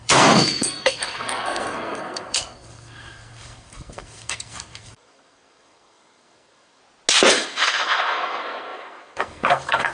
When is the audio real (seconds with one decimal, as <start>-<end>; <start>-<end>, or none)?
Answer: 6.8-7.3